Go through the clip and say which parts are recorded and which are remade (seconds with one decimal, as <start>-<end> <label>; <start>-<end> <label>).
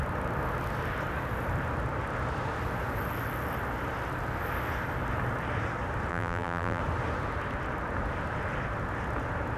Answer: 0.0-6.1 recorded; 6.1-6.8 remade; 6.8-9.6 recorded